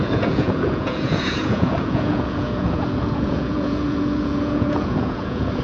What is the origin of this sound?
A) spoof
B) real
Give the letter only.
A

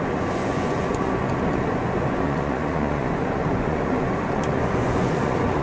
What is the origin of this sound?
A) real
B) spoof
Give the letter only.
B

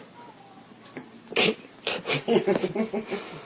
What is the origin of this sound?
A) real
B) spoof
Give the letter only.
A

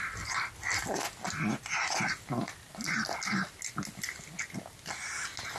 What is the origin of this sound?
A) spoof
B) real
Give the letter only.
B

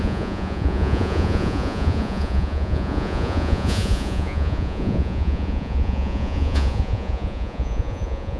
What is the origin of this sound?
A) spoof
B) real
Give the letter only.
A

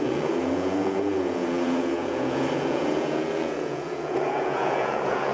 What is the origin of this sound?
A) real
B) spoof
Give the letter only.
B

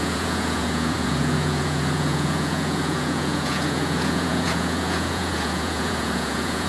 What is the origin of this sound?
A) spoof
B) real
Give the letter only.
A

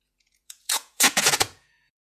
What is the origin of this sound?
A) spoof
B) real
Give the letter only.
A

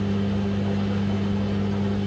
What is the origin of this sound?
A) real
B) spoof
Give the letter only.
A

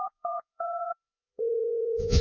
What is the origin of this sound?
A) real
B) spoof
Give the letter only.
B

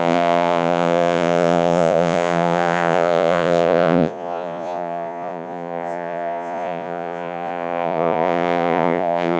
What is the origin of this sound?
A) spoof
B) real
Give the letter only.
A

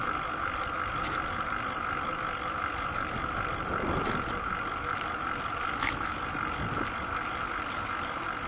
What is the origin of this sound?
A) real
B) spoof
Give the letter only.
A